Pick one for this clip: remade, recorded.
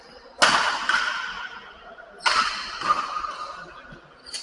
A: recorded